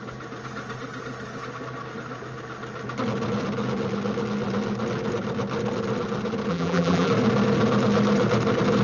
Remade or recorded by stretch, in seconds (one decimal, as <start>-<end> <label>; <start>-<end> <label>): 0.0-6.5 recorded; 6.5-7.1 remade; 7.1-8.8 recorded